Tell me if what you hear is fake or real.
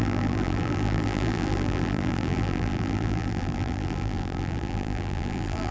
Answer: fake